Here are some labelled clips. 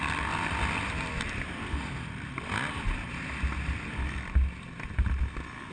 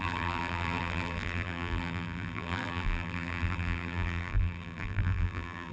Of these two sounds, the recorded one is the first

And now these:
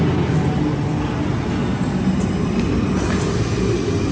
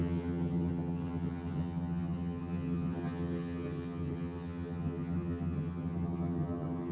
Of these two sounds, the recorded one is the first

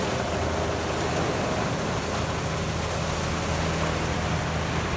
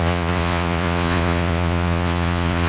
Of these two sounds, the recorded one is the first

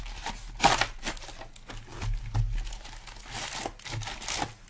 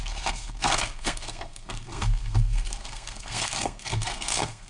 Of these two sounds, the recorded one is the first